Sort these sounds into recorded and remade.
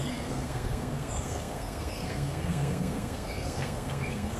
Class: remade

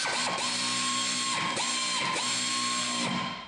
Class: recorded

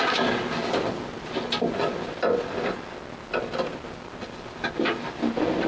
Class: recorded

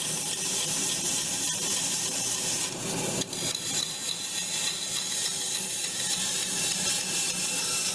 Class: remade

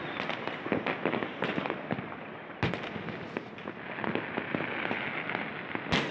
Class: recorded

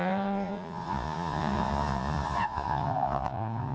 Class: remade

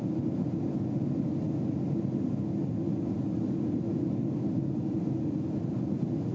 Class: recorded